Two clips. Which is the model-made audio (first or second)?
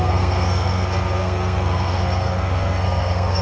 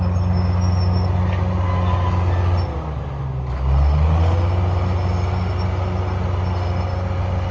first